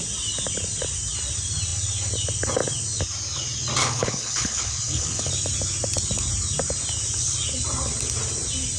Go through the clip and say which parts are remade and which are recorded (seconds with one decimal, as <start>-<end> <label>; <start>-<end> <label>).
0.0-3.8 recorded; 3.8-5.3 remade; 5.3-8.8 recorded